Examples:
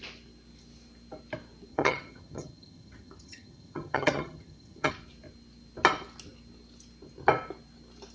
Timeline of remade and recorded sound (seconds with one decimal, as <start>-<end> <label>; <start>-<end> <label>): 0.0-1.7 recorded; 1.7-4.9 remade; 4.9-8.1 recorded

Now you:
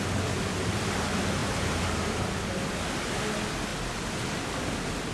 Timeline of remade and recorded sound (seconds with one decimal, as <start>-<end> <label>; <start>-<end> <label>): 0.0-1.4 recorded; 1.4-2.3 remade; 2.3-5.1 recorded

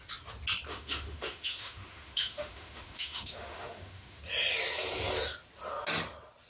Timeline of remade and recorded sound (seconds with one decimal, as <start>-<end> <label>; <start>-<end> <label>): 0.0-0.7 recorded; 0.7-4.2 remade; 4.2-6.5 recorded

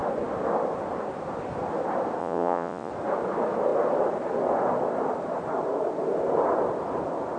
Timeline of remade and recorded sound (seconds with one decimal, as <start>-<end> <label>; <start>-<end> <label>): 0.0-2.2 recorded; 2.2-2.9 remade; 2.9-7.4 recorded

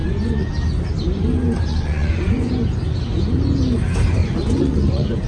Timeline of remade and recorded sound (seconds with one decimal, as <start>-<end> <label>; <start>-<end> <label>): 0.0-0.5 remade; 0.5-1.7 recorded; 1.7-2.5 remade; 2.5-4.2 recorded; 4.2-5.3 remade